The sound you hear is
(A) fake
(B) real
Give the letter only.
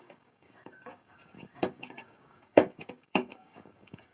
A